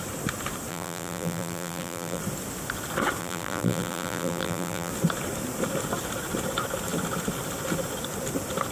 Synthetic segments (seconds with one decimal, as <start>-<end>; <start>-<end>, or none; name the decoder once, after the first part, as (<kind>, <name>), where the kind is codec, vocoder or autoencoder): 0.7-2.2 (vocoder, BigVGAN v2); 3.2-4.9